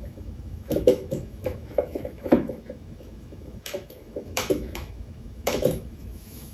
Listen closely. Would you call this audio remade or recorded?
remade